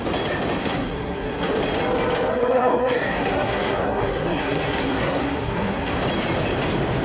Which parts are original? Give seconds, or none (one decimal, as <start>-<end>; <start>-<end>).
0.0-0.6; 1.5-2.3; 5.9-7.0